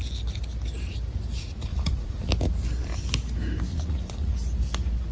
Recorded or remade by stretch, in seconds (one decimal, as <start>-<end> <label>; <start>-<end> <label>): 0.0-1.7 recorded; 1.7-2.3 remade; 2.3-3.7 recorded; 3.7-4.3 remade; 4.3-5.1 recorded